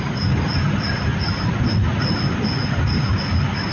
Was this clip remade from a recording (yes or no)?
no